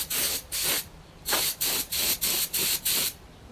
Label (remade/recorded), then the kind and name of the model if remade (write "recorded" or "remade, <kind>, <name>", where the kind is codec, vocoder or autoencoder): remade, vocoder, BigVGAN v2